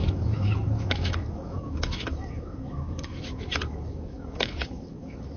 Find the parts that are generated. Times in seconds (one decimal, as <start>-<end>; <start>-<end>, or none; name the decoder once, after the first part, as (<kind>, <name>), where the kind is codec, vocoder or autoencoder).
0.0-5.4 (autoencoder, DAC-VAE)